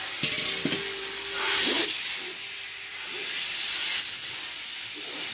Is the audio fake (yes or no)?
no